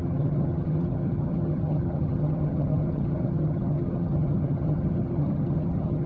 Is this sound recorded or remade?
remade